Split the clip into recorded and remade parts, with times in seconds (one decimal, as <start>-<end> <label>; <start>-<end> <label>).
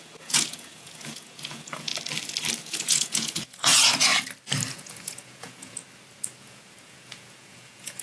0.0-1.9 remade; 1.9-2.6 recorded; 2.6-4.1 remade; 4.1-4.7 recorded; 4.7-5.8 remade; 5.8-6.4 recorded; 6.4-8.0 remade